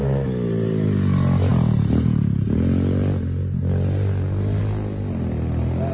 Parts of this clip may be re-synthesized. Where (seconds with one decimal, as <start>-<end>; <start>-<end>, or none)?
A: none